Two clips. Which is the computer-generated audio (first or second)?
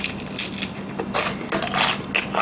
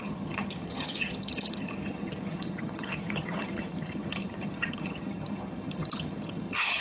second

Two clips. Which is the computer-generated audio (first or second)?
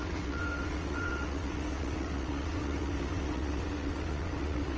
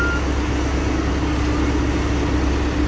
first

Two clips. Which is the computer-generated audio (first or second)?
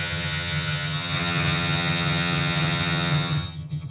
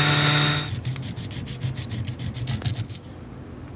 first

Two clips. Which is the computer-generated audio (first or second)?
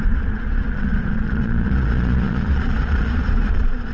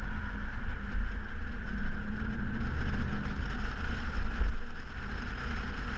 first